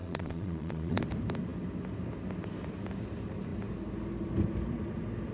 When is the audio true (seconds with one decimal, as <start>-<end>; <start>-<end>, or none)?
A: 1.0-5.3